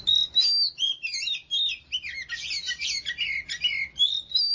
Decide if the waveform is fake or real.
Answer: real